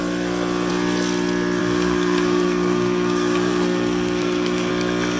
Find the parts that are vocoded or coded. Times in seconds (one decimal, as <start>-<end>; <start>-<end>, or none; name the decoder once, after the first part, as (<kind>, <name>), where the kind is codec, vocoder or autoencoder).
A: 1.6-4.7 (codec, SNAC)